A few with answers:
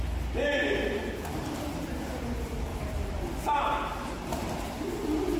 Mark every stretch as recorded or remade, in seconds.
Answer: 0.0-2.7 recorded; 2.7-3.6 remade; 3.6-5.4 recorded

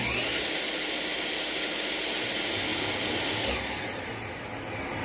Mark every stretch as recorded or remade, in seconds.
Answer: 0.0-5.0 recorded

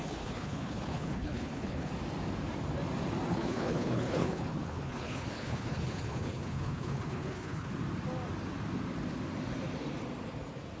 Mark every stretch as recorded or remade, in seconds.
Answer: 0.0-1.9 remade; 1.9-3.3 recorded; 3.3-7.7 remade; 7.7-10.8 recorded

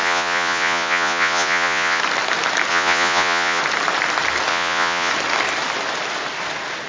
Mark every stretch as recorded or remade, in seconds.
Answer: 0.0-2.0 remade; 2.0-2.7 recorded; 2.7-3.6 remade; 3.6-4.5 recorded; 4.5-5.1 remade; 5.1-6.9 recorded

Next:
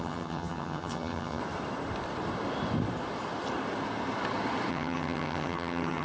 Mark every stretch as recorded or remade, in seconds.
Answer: 0.0-1.4 remade; 1.4-4.7 recorded; 4.7-6.0 remade

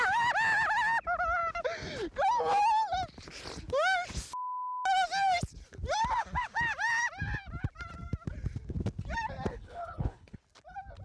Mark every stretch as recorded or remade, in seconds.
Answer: 0.0-9.5 recorded; 9.5-10.4 remade; 10.4-11.0 recorded

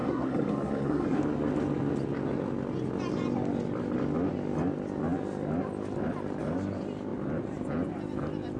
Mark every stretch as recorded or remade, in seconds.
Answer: 0.0-1.2 remade; 1.2-8.6 recorded